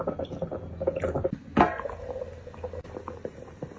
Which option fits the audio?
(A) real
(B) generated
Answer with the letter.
A